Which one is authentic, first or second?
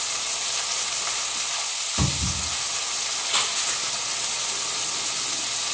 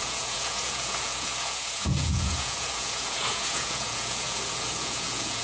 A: first